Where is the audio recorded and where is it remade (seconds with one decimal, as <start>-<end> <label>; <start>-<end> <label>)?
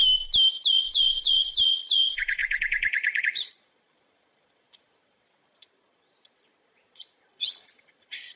0.0-0.7 recorded; 0.7-8.4 remade